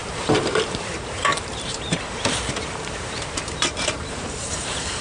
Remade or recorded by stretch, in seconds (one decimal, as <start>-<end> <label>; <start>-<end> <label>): 0.0-5.0 remade